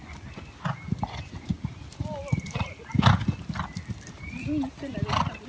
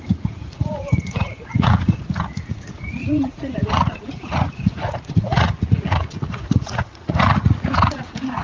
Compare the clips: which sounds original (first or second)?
first